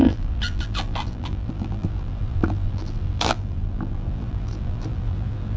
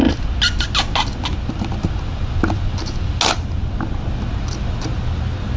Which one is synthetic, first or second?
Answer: first